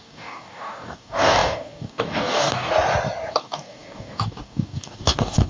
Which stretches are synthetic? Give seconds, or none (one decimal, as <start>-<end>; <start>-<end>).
0.0-2.7; 3.3-5.5